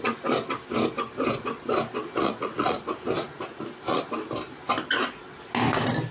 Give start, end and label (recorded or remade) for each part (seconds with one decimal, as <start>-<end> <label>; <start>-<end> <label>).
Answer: 0.0-2.2 recorded; 2.2-2.8 remade; 2.8-3.2 recorded; 3.2-4.0 remade; 4.0-6.1 recorded